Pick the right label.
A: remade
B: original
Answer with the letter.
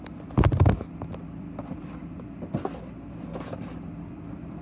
B